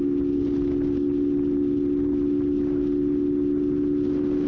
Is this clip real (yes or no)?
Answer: yes